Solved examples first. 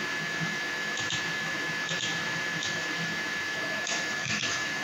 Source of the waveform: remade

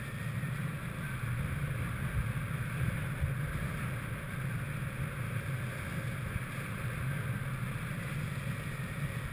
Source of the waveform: recorded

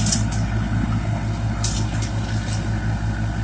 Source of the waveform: recorded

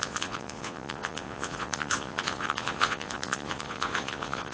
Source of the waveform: remade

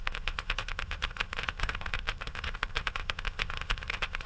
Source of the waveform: remade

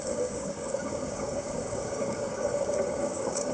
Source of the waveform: remade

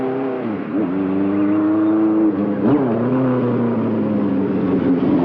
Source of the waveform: recorded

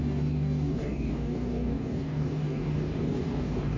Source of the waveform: remade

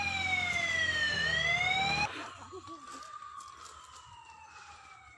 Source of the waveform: recorded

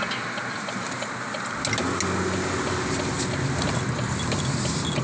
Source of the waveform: recorded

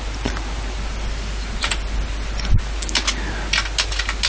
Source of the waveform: recorded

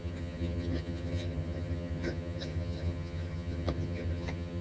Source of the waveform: remade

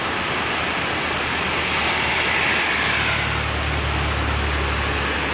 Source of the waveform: recorded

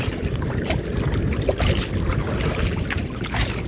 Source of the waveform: recorded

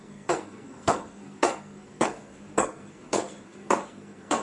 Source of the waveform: remade